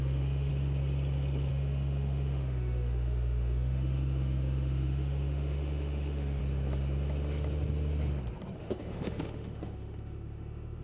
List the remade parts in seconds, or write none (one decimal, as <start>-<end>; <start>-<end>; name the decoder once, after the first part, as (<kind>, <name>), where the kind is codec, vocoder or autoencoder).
0.0-0.5 (autoencoder, DAC-VAE); 1.5-6.4; 8.6-10.8